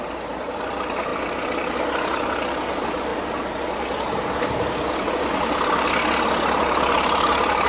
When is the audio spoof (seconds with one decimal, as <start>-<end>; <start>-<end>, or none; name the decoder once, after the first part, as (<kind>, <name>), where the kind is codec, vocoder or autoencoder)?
none